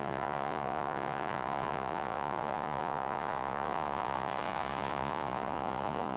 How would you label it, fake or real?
fake